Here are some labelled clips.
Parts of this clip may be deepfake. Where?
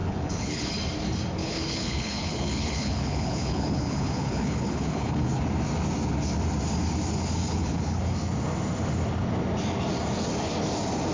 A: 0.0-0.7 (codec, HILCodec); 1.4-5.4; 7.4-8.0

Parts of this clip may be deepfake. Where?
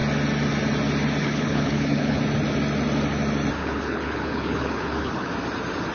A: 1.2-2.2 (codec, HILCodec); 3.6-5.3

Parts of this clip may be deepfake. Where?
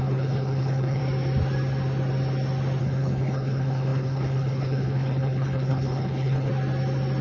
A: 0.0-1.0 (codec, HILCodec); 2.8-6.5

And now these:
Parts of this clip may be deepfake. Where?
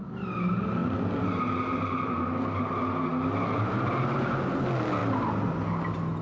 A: none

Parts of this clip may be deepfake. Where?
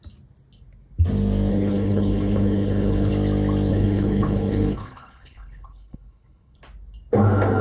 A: 1.5-3.1 (codec, HILCodec); 3.7-6.6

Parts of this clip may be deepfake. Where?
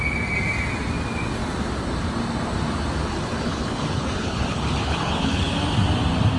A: 3.1-5.5 (codec, HILCodec)